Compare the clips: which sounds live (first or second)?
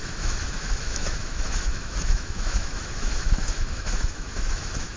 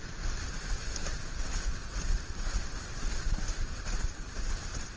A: second